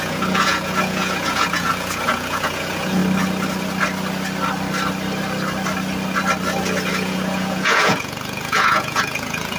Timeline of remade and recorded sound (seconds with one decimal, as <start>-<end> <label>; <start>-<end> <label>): 0.0-3.0 remade; 3.0-6.9 recorded; 6.9-9.6 remade